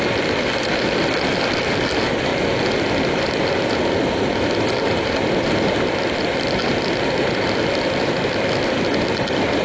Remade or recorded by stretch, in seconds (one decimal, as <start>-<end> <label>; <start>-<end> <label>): 0.0-9.6 recorded